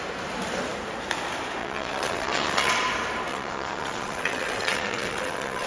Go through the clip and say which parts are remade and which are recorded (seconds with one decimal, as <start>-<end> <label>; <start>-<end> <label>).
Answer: 0.0-1.6 recorded; 1.6-2.7 remade; 2.7-3.3 recorded; 3.3-5.7 remade